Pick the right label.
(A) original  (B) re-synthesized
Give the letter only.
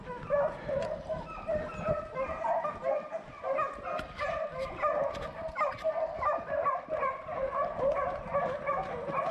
A